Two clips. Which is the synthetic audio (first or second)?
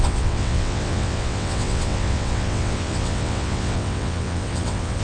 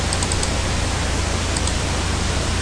first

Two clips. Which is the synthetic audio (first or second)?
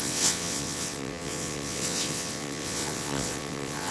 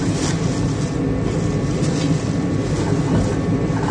first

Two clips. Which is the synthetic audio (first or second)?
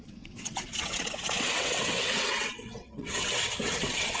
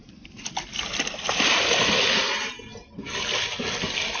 first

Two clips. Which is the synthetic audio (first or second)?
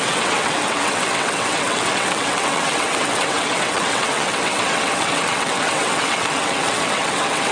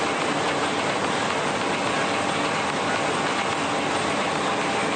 first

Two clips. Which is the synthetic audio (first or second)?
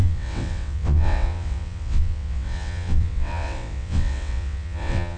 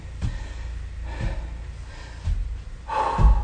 first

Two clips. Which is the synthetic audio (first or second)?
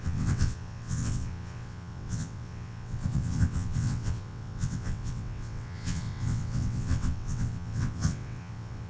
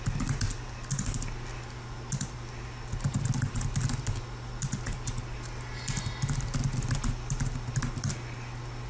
first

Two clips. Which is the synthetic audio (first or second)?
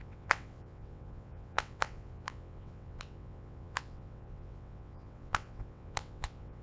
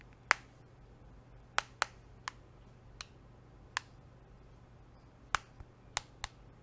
first